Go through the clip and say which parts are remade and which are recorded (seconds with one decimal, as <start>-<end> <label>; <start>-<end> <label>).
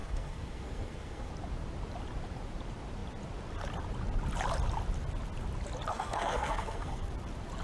0.0-1.3 remade; 1.3-5.9 recorded; 5.9-7.1 remade; 7.1-7.6 recorded